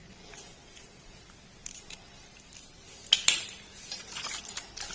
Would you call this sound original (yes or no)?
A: no